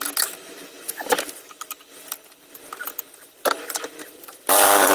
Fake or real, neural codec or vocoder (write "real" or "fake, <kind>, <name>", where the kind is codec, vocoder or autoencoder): real